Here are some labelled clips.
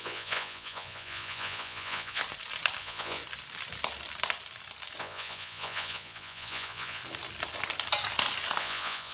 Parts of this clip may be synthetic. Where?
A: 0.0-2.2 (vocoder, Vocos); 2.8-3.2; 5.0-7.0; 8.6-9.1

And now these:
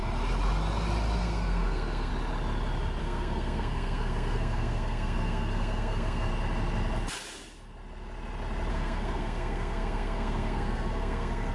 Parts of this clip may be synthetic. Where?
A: 1.2-2.1 (codec, SNAC); 3.0-6.3; 8.7-11.5

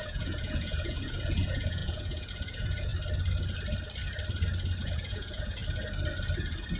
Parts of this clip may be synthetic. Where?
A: 0.0-2.9 (vocoder, Vocos); 4.8-5.6

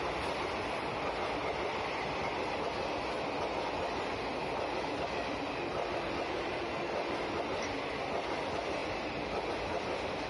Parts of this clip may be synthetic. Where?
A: none

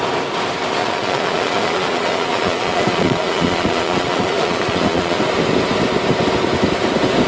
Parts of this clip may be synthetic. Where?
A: 0.8-5.2 (vocoder, Vocos)

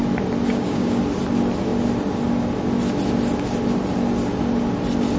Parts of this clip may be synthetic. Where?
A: 0.5-1.0 (codec, DAC)

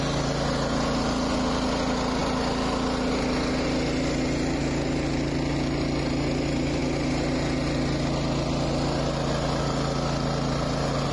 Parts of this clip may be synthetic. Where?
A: none